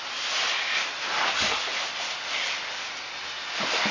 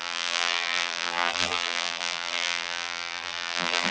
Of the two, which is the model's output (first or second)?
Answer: second